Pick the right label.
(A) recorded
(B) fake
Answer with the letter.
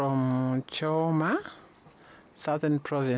A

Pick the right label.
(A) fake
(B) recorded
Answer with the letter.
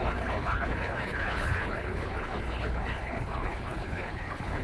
A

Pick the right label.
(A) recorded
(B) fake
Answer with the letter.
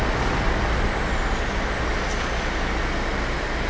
A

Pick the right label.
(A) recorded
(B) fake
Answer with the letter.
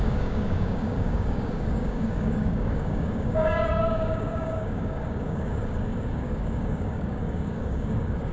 B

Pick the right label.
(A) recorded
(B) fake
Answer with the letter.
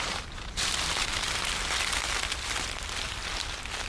A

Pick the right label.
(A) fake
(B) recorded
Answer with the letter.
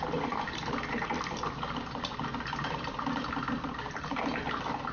B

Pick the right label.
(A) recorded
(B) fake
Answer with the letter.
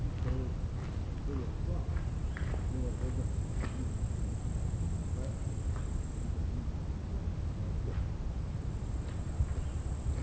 A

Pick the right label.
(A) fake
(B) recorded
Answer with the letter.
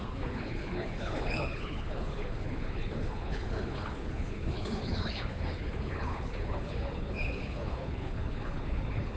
A